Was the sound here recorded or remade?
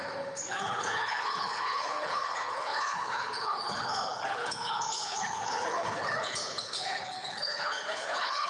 remade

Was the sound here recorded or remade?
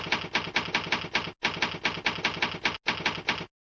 recorded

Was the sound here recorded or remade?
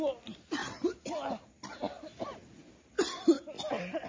recorded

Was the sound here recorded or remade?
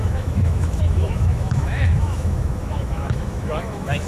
remade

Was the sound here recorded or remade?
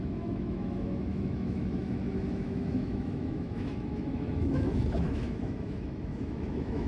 remade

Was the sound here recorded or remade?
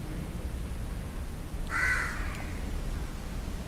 recorded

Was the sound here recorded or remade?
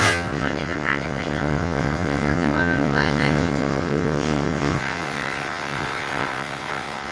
remade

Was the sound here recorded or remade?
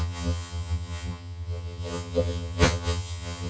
remade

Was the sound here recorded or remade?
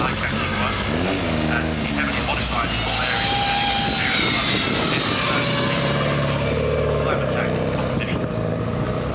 recorded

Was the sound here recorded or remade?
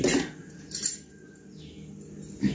recorded